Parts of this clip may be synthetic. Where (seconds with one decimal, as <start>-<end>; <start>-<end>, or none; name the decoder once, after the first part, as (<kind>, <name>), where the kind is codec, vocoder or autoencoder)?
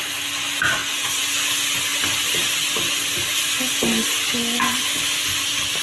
none